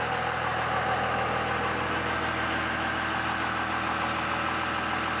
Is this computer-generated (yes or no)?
no